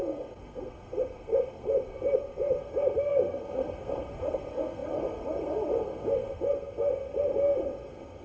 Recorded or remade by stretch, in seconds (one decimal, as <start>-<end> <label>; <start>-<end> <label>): 0.0-8.2 remade

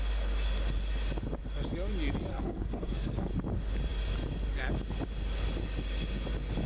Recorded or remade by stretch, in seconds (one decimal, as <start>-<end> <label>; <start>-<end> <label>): 0.0-2.3 recorded; 2.3-3.3 remade; 3.3-6.7 recorded

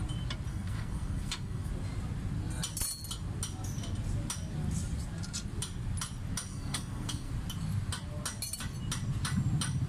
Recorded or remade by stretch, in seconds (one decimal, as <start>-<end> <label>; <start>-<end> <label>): 0.0-0.5 recorded; 0.5-1.7 remade; 1.7-6.5 recorded; 6.5-7.3 remade; 7.3-9.9 recorded

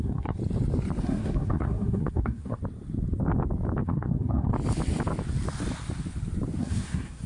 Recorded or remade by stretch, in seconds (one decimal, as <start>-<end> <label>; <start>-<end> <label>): 0.0-0.4 remade; 0.4-1.0 recorded; 1.0-2.6 remade; 2.6-3.8 recorded; 3.8-4.5 remade; 4.5-6.6 recorded; 6.6-7.3 remade

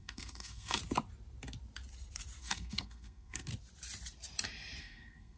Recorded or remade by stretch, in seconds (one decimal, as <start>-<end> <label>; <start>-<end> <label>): 0.0-0.8 remade; 0.8-2.4 recorded; 2.4-3.5 remade; 3.5-4.8 recorded; 4.8-5.4 remade

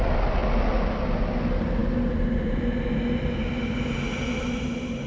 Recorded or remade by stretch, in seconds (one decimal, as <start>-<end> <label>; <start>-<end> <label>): 0.0-5.1 recorded